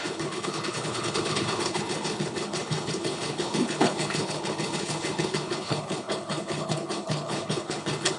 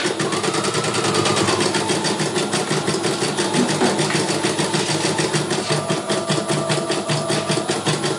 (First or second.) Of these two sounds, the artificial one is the first